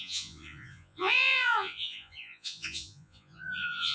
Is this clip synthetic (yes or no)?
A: yes